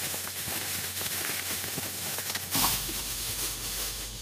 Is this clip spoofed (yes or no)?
yes